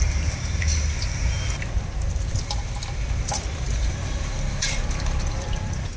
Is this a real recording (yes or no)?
no